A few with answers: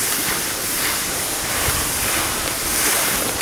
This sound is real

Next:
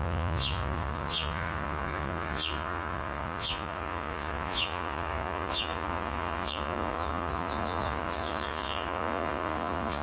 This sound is fake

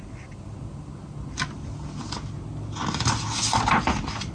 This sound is real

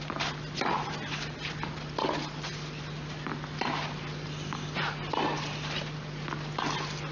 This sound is real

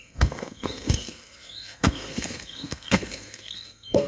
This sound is fake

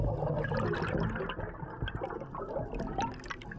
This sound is real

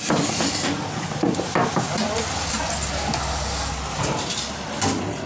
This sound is real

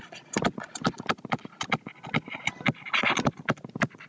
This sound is real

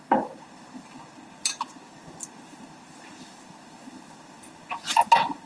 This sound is real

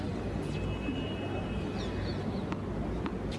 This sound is real